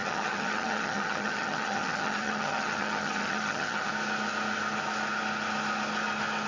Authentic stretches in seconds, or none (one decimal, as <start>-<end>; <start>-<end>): 3.9-6.5